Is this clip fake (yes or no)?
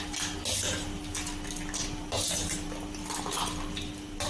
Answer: no